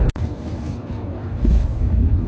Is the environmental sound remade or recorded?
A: remade